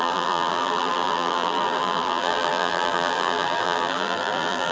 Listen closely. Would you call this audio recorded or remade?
remade